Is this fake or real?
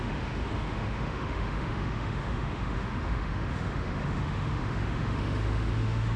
fake